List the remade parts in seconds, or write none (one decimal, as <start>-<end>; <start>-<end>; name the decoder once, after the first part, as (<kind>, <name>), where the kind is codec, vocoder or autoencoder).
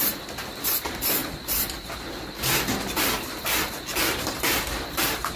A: none